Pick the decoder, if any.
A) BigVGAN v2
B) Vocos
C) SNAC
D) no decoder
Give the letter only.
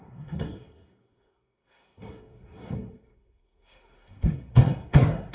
C